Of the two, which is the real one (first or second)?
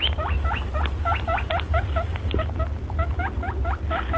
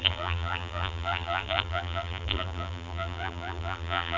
first